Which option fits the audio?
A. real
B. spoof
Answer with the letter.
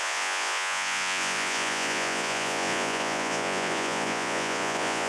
B